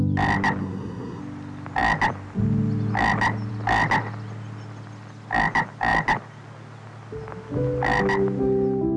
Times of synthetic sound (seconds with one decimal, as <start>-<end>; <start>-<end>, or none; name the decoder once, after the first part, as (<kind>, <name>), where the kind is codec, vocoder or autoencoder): 0.6-1.2 (codec, SNAC)